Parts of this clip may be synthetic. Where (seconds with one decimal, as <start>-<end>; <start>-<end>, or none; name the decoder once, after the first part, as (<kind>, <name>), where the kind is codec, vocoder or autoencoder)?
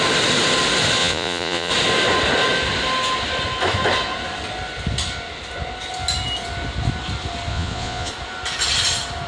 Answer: 1.0-1.7 (vocoder, Vocos); 7.5-8.1